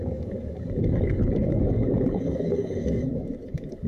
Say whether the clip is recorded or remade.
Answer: remade